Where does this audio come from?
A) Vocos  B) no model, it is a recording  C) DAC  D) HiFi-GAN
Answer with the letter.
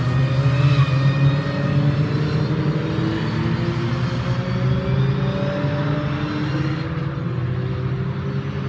B